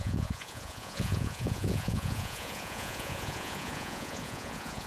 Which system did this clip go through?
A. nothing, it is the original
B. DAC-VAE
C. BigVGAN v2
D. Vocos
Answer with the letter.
D